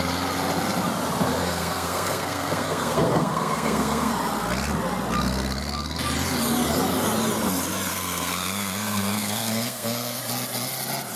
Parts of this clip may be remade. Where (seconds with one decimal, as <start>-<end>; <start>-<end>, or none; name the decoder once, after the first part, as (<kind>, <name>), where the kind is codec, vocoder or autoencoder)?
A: 1.4-4.1 (codec, SNAC); 7.9-10.2